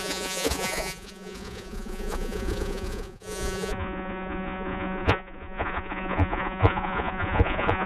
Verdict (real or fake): fake